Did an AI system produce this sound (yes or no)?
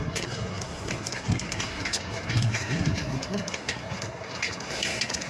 yes